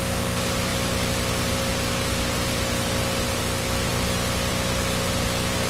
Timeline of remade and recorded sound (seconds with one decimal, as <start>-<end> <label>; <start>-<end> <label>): 0.0-5.7 recorded

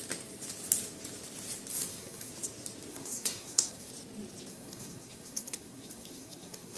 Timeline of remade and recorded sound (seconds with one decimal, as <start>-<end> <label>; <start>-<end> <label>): 0.0-1.7 recorded; 1.7-2.3 remade; 2.3-2.9 recorded; 2.9-3.9 remade; 3.9-4.5 recorded; 4.5-6.8 remade

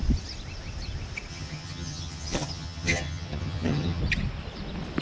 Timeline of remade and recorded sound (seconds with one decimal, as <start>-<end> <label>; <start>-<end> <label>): 0.0-1.3 recorded; 1.3-4.0 remade; 4.0-5.0 recorded

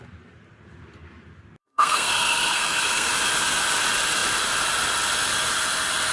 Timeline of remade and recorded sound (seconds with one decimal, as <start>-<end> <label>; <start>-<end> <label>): 0.0-1.6 recorded; 1.6-3.1 remade; 3.1-6.1 recorded

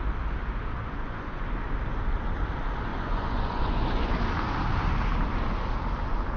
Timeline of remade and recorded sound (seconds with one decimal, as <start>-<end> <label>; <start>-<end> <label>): 0.0-0.8 recorded; 0.8-1.5 remade; 1.5-2.9 recorded; 2.9-4.1 remade; 4.1-6.4 recorded

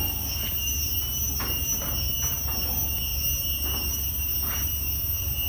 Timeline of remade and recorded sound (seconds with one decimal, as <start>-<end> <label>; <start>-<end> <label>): 0.0-5.5 recorded

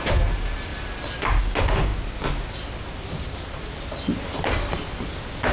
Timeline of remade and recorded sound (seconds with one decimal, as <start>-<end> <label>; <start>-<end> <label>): 0.0-5.5 recorded

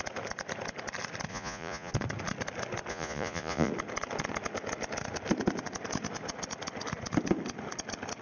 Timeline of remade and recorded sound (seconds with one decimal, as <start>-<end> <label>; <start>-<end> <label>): 0.0-1.3 recorded; 1.3-1.9 remade; 1.9-2.9 recorded; 2.9-3.7 remade; 3.7-8.2 recorded